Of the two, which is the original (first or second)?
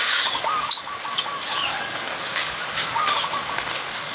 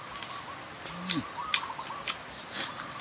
second